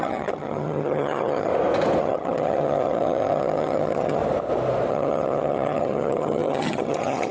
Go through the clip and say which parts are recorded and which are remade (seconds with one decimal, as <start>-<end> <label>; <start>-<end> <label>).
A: 0.0-1.5 remade; 1.5-2.0 recorded; 2.0-4.2 remade; 4.2-4.9 recorded; 4.9-7.3 remade